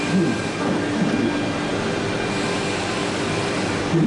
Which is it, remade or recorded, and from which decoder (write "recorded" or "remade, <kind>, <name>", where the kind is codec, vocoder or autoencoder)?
recorded